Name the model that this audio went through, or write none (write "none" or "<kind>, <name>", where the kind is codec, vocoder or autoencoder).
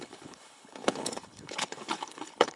codec, HILCodec